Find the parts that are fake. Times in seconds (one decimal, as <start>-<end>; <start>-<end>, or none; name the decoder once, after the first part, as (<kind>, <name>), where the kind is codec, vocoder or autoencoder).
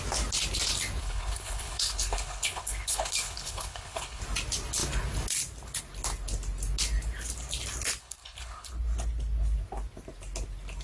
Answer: 1.0-4.2 (codec, HILCodec); 8.0-8.7